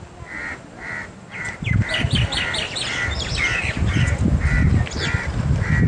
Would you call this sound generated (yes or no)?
no